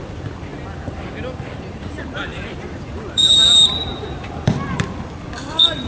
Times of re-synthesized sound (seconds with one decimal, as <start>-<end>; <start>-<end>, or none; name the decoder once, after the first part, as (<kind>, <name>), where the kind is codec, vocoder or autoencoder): 0.0-0.5 (vocoder, BigVGAN v2); 1.6-5.9